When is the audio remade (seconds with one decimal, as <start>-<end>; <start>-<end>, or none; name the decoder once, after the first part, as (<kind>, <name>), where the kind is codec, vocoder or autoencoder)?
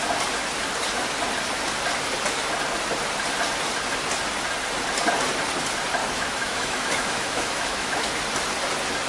6.0-8.1 (autoencoder, DAC-VAE)